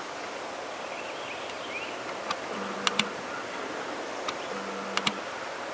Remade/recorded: recorded